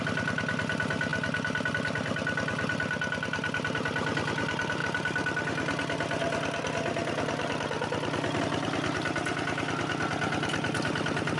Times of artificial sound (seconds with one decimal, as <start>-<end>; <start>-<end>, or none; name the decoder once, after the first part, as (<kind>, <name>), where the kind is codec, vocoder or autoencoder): none